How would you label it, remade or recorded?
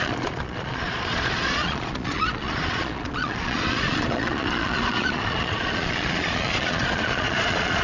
remade